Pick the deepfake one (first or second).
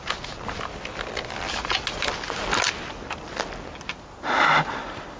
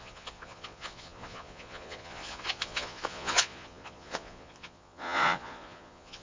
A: second